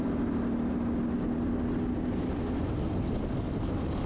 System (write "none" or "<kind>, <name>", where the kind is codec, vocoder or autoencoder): none